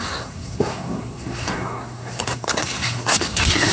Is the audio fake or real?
fake